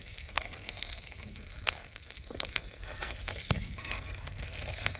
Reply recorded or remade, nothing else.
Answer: remade